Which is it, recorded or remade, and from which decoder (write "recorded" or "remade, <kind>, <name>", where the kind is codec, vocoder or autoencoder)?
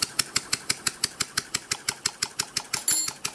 recorded